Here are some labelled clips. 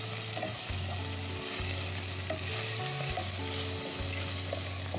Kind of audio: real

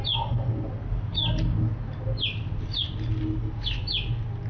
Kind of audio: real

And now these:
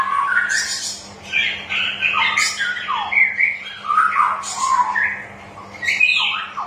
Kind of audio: real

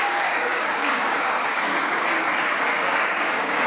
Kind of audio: fake